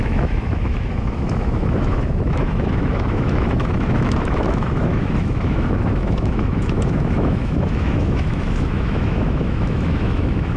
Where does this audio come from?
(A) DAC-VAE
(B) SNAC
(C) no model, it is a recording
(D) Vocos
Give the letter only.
A